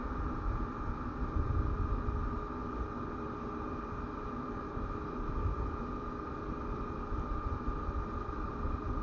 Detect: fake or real real